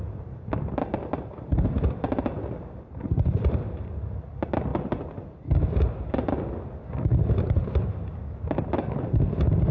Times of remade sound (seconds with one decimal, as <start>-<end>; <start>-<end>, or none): none